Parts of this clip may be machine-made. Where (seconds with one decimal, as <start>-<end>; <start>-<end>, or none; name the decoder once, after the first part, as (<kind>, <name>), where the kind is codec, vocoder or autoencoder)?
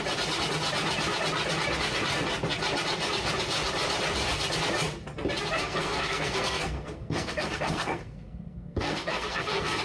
5.6-9.8 (codec, SNAC)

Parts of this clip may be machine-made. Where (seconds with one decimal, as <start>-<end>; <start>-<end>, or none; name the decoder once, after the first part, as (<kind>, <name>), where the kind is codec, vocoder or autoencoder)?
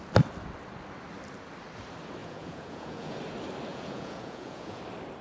2.2-3.2 (vocoder, Vocos); 3.7-4.8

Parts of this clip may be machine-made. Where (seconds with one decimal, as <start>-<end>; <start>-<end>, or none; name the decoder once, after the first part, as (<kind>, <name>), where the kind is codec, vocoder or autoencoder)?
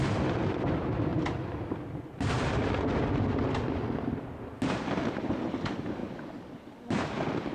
none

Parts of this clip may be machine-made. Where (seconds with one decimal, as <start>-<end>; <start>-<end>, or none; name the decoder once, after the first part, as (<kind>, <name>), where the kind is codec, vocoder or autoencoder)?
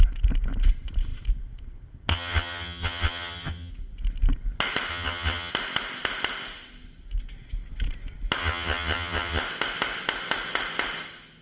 2.1-3.7 (vocoder, HiFi-GAN); 4.9-5.5; 8.4-9.4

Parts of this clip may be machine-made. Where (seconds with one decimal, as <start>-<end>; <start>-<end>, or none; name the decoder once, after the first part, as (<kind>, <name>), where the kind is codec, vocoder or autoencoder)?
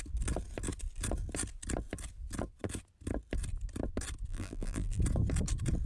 4.3-5.0 (vocoder, BigVGAN v2)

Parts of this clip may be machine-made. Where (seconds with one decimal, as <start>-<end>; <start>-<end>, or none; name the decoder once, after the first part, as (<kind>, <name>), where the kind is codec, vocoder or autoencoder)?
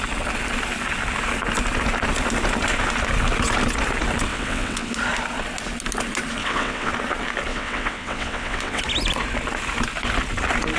4.3-4.9 (vocoder, WaveNeXt); 6.4-6.9; 7.5-8.8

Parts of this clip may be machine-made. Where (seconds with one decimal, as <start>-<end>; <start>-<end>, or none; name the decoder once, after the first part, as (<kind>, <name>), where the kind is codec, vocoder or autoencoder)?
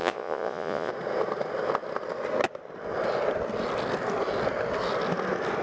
0.0-0.9 (vocoder, Vocos)